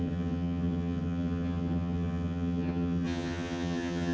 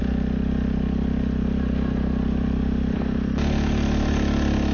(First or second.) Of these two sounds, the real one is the second